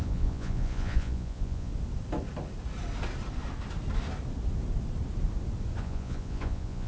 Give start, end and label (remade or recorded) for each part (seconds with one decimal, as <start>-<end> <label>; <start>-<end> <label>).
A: 0.0-1.7 remade; 1.7-5.8 recorded; 5.8-6.9 remade